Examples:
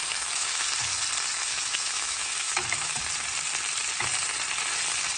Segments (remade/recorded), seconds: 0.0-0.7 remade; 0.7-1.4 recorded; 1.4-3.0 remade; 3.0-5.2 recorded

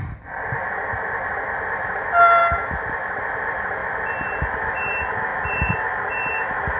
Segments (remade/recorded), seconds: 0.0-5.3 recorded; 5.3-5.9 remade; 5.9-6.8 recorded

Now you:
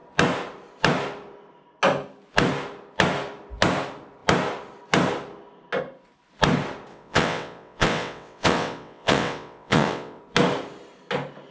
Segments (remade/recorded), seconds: 0.0-6.9 recorded; 6.9-10.2 remade; 10.2-11.5 recorded